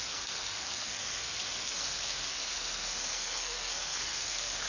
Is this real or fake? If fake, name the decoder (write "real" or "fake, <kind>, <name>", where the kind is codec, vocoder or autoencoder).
fake, codec, SNAC